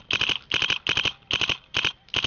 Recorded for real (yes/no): yes